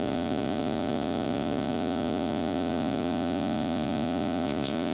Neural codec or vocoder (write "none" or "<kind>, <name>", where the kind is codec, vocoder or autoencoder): vocoder, Vocos